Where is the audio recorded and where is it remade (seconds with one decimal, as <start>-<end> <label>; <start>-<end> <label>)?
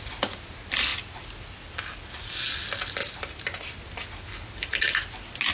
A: 0.0-3.0 recorded; 3.0-3.8 remade; 3.8-5.5 recorded